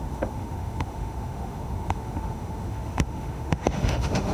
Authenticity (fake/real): fake